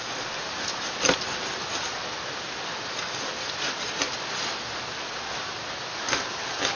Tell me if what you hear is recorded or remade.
recorded